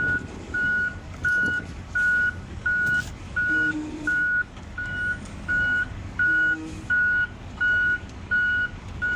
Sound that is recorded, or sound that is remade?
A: remade